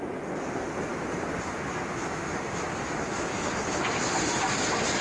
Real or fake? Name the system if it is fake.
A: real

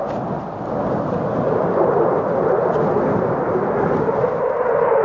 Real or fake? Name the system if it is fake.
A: real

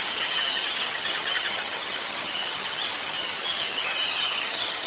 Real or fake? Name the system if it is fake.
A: fake, vocoder, HiFi-GAN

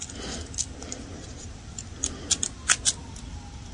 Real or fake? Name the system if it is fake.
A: real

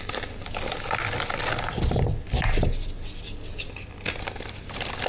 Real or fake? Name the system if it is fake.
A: real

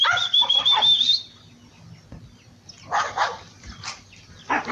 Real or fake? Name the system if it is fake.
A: real